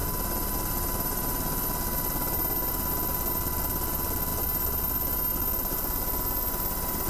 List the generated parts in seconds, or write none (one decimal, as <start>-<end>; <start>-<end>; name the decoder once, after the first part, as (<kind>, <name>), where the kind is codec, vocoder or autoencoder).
none